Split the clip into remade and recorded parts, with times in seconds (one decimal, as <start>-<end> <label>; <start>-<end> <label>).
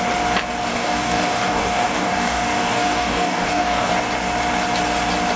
0.0-0.7 recorded; 0.7-3.9 remade; 3.9-5.4 recorded